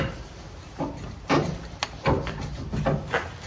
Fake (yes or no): no